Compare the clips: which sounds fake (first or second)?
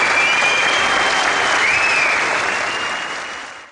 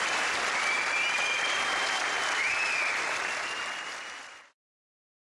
second